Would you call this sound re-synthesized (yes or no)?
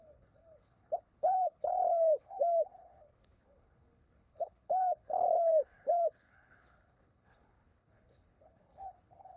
yes